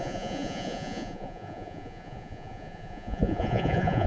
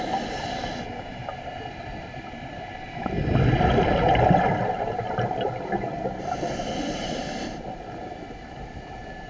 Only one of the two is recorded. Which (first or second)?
second